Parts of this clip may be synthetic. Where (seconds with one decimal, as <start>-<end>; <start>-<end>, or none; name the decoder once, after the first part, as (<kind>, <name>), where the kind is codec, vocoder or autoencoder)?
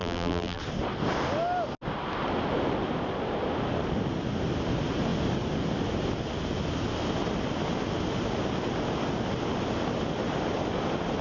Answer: 0.0-0.6 (vocoder, BigVGAN v2)